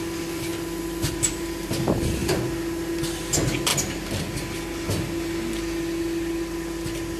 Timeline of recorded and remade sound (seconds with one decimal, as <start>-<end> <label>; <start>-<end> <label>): 0.0-7.2 recorded